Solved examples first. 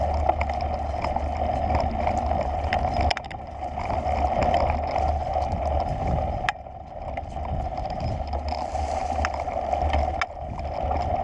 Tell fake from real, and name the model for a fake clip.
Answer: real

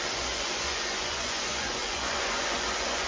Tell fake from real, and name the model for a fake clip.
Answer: fake, vocoder, Vocos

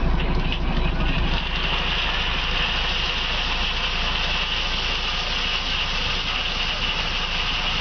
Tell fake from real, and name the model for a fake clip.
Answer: real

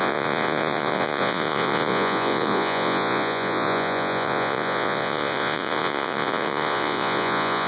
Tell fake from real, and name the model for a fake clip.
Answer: fake, vocoder, Vocos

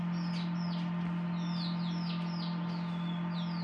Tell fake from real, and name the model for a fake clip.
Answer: real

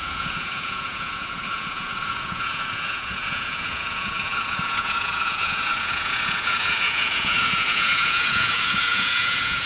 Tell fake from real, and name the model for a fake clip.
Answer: fake, vocoder, Vocos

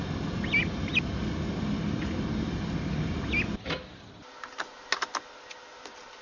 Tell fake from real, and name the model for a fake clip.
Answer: real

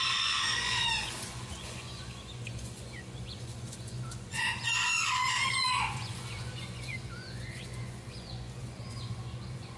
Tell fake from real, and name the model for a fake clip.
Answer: fake, vocoder, Vocos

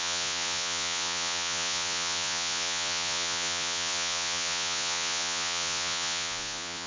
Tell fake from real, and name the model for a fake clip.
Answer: fake, vocoder, Vocos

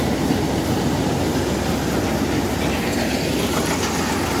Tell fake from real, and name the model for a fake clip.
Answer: real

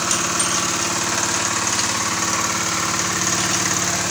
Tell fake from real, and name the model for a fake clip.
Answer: real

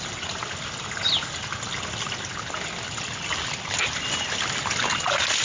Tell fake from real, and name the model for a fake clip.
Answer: real